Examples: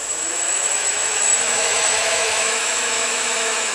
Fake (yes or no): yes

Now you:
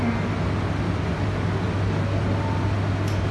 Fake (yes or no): no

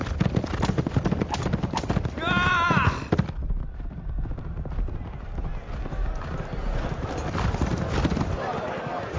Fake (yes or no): no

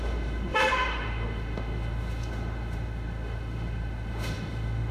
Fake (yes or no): yes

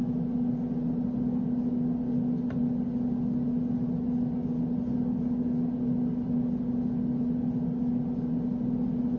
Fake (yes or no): no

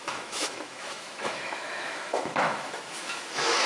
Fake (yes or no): yes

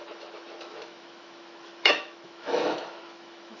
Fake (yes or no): yes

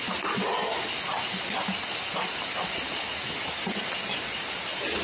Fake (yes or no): no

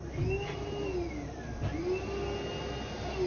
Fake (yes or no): no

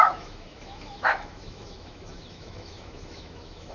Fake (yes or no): yes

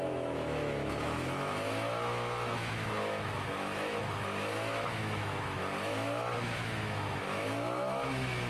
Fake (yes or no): yes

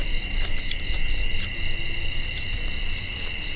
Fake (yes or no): no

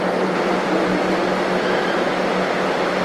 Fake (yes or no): no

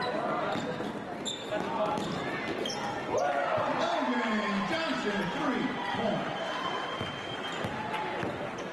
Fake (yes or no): no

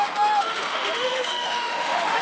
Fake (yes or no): yes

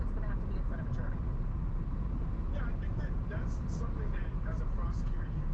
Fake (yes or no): no